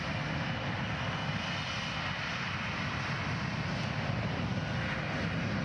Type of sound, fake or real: real